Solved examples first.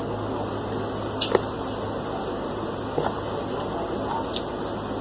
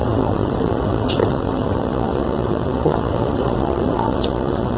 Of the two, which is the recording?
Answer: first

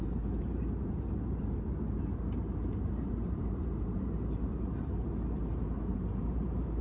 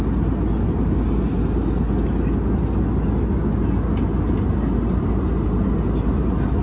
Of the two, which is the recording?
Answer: second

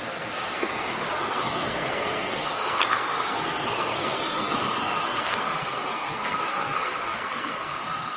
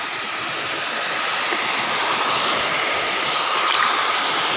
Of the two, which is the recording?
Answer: second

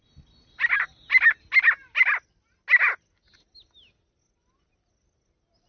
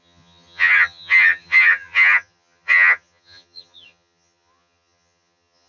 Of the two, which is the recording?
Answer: first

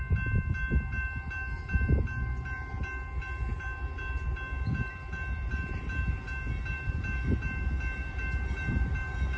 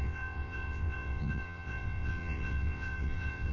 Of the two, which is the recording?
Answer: first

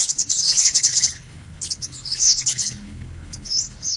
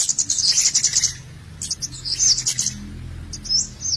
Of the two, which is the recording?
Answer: second